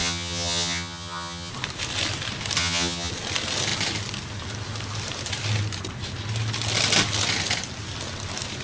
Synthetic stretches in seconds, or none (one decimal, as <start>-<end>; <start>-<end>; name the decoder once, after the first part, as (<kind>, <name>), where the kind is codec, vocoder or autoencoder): 0.0-1.5 (vocoder, HiFi-GAN); 2.6-3.1